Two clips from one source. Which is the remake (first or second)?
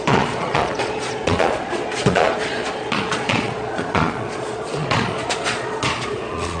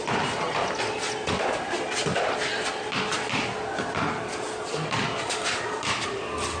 first